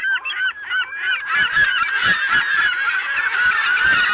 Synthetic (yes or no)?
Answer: yes